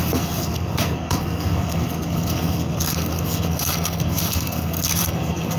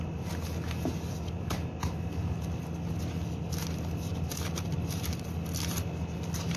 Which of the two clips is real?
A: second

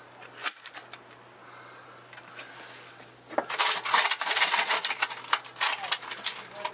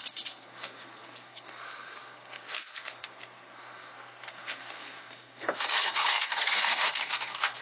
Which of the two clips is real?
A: first